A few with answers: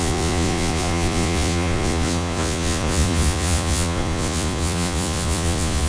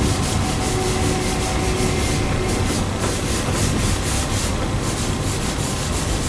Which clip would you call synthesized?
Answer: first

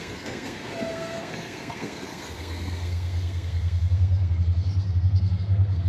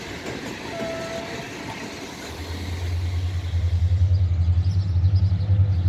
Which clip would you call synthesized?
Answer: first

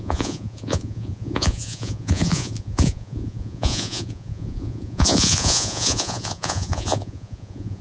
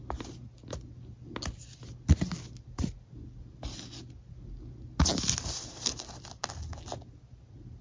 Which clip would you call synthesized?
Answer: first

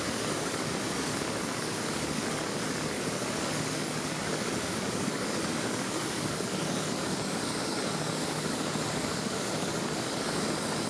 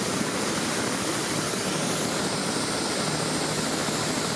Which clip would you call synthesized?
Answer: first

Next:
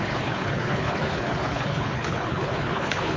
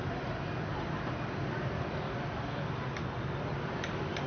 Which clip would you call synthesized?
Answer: first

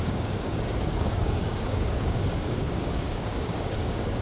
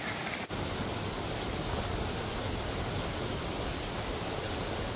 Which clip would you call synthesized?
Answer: first